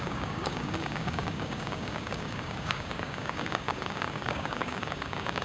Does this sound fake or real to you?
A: fake